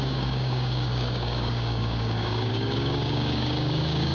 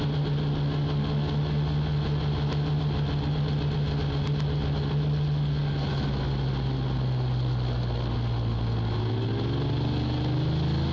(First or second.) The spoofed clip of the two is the first